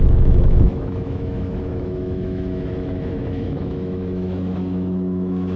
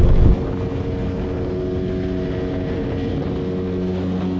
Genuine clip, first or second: second